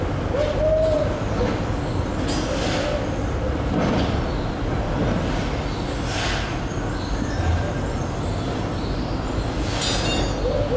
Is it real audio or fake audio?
real